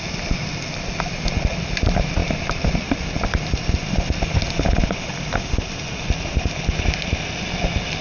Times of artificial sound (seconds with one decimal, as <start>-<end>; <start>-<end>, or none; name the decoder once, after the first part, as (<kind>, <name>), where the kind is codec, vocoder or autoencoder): none